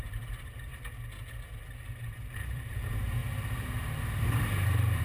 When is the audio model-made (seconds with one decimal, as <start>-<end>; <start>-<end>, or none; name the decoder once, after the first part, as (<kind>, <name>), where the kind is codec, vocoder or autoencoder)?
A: 0.0-0.7 (vocoder, BigVGAN v2); 1.9-3.2; 4.0-5.0